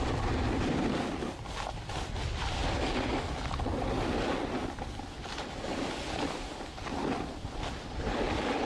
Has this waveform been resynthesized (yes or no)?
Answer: no